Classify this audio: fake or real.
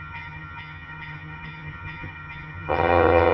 fake